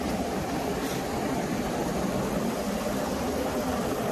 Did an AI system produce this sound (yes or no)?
no